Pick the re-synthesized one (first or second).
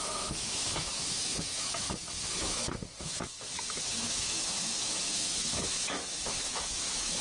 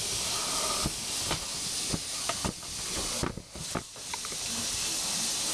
first